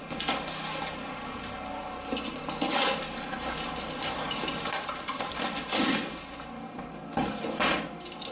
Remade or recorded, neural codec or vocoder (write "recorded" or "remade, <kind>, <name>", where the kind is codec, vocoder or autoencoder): recorded